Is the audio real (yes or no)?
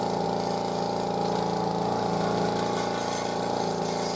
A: yes